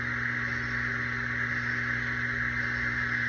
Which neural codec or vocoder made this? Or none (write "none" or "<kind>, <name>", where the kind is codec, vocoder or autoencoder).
none